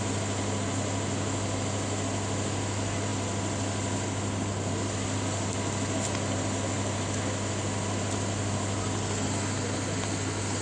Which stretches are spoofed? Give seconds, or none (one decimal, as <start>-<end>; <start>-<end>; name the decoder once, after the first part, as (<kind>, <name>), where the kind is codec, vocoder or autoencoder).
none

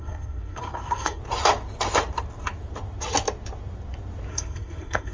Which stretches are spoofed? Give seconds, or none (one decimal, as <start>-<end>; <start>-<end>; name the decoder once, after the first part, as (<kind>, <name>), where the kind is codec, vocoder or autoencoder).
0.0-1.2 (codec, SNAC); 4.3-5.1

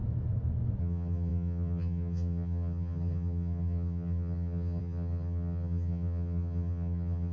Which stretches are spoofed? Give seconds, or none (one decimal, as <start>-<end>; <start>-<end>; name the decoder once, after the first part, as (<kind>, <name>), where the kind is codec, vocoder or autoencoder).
0.8-7.3 (vocoder, HiFi-GAN)

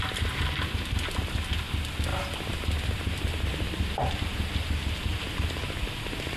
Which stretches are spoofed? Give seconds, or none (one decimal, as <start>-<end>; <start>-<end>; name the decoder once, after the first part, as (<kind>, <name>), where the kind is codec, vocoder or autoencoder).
2.1-5.9 (vocoder, BigVGAN v2)

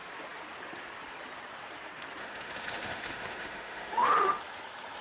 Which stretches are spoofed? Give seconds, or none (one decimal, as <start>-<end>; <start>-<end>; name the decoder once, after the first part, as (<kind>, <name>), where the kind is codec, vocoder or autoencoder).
2.2-4.4 (autoencoder, DAC-VAE)

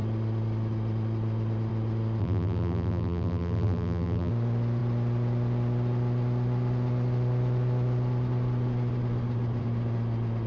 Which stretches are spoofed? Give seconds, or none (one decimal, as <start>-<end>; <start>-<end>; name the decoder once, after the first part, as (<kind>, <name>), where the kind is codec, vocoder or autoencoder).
2.2-4.3 (vocoder, BigVGAN v2)